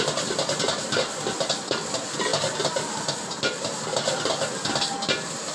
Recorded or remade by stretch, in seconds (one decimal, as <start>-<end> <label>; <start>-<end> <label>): 0.0-5.5 recorded